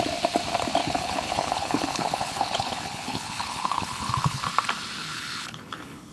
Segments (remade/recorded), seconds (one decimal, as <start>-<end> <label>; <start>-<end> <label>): 0.0-0.8 recorded; 0.8-4.4 remade; 4.4-5.0 recorded; 5.0-6.1 remade